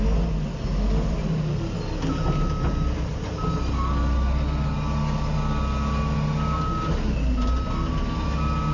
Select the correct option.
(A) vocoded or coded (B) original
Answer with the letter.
B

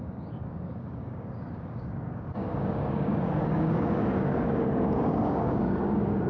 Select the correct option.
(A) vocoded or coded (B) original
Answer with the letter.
A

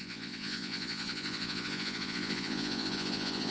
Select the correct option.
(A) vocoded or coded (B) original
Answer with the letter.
A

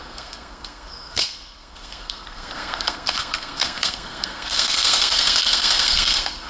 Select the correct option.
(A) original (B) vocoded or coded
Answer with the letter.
B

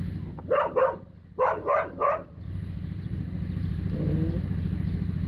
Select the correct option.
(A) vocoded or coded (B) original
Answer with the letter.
B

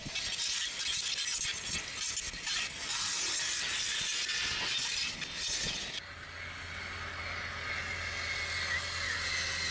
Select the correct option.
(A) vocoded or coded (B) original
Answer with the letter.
B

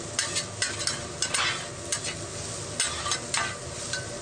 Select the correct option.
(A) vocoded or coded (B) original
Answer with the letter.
B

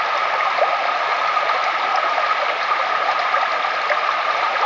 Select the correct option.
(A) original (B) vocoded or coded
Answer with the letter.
A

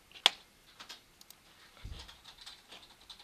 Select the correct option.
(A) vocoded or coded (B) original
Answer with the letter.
B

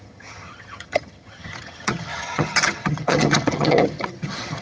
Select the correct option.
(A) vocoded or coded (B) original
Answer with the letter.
A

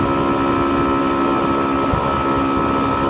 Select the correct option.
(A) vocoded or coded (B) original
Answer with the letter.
B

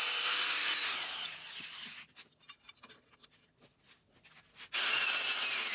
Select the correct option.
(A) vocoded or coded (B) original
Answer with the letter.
B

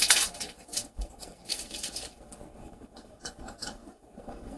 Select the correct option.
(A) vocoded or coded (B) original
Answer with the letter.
A